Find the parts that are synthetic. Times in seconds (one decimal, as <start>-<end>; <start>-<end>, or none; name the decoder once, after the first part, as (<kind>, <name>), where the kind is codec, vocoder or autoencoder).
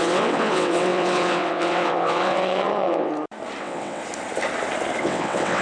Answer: 0.0-3.1 (vocoder, WaveNeXt); 3.6-4.0; 5.0-5.6